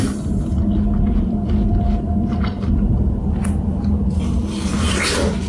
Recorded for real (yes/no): yes